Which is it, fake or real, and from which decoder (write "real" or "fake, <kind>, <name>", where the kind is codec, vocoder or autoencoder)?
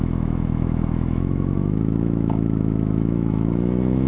fake, autoencoder, DAC-VAE